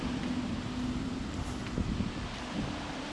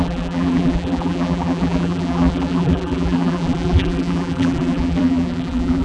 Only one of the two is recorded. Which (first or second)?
first